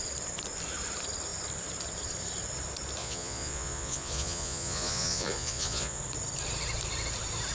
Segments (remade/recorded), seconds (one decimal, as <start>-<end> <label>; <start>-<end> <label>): 0.0-3.0 recorded; 3.0-6.0 remade; 6.0-7.5 recorded